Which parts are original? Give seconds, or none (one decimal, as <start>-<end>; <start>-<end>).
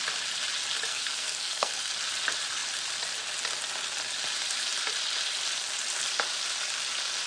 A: 0.0-0.9; 1.9-7.3